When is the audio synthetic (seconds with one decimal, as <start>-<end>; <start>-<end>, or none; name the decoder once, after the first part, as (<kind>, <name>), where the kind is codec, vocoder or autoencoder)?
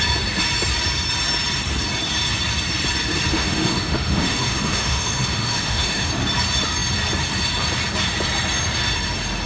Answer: 3.3-6.1 (autoencoder, DAC-VAE)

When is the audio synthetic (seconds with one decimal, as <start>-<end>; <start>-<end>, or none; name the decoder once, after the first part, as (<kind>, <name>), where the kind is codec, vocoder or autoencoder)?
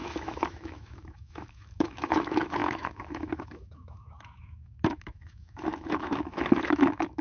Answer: 0.0-7.2 (autoencoder, DAC-VAE)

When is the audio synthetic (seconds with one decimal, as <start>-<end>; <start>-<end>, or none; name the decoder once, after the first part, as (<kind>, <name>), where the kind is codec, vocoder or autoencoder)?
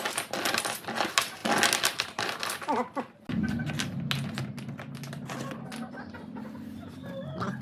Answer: none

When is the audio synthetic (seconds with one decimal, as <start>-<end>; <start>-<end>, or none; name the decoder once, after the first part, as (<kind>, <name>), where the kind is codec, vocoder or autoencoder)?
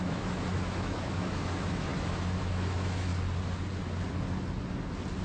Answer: 0.0-1.9 (autoencoder, DAC-VAE); 2.4-3.1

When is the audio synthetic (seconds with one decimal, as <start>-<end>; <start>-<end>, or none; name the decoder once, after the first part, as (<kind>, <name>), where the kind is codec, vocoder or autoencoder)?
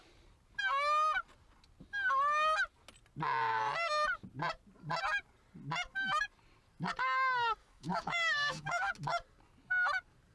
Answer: 7.6-8.9 (autoencoder, DAC-VAE)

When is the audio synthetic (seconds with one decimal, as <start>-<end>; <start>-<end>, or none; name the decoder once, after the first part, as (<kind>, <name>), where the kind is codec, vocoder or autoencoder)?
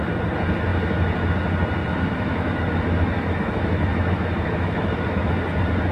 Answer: 1.8-5.3 (autoencoder, DAC-VAE)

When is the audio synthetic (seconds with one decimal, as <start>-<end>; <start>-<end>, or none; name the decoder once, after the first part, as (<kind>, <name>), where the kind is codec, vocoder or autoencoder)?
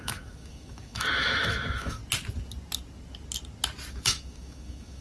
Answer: 0.0-2.0 (autoencoder, DAC-VAE); 3.9-5.0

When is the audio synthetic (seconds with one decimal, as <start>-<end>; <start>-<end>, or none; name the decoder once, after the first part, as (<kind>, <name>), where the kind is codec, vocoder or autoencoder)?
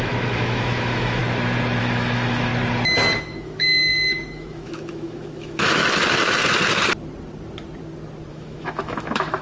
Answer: 0.0-1.2 (autoencoder, DAC-VAE); 1.8-2.5; 3.2-5.8; 8.3-9.4